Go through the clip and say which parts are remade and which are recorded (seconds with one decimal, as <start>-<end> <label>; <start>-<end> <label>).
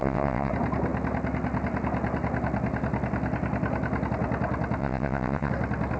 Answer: 0.0-0.5 remade; 0.5-4.8 recorded; 4.8-5.5 remade; 5.5-6.0 recorded